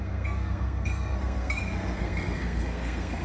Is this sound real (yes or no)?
no